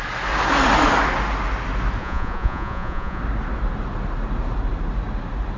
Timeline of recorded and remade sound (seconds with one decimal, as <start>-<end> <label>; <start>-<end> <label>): 0.0-2.0 recorded; 2.0-3.2 remade; 3.2-5.6 recorded